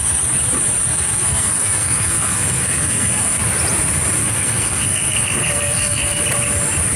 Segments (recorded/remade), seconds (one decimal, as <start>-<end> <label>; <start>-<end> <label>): 0.0-0.9 recorded; 0.9-3.4 remade; 3.4-4.2 recorded; 4.2-6.2 remade; 6.2-7.0 recorded